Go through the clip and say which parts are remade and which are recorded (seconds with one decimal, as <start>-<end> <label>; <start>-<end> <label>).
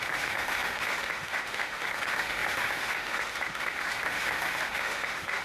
0.0-5.4 remade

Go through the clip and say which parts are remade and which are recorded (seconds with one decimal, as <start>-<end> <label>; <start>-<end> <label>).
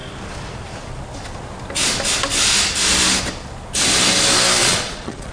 0.0-4.6 recorded; 4.6-5.3 remade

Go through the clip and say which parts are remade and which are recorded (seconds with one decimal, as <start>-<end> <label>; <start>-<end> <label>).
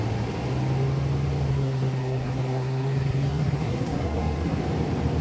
0.0-1.5 recorded; 1.5-4.6 remade; 4.6-5.2 recorded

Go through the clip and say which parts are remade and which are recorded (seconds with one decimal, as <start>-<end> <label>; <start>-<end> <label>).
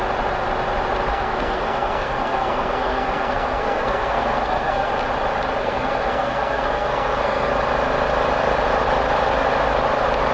0.0-1.1 recorded; 1.1-4.9 remade; 4.9-5.6 recorded; 5.6-7.5 remade; 7.5-10.3 recorded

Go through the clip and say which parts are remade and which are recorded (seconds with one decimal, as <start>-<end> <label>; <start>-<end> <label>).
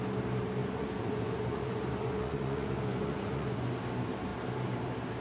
0.0-0.6 recorded; 0.6-3.7 remade; 3.7-5.2 recorded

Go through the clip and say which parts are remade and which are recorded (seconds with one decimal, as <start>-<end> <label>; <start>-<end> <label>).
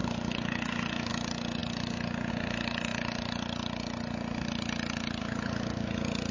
0.0-1.1 remade; 1.1-6.3 recorded